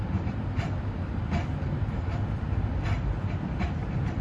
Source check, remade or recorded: remade